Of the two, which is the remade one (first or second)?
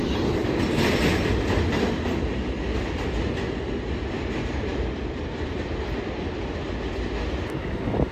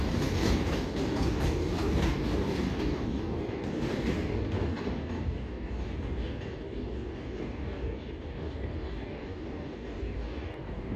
second